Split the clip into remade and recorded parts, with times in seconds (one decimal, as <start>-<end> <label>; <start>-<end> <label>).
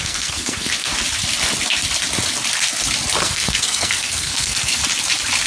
0.0-0.9 remade; 0.9-3.2 recorded; 3.2-4.8 remade; 4.8-5.5 recorded